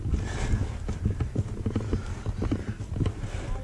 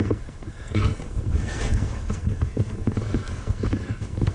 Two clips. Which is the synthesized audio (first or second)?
second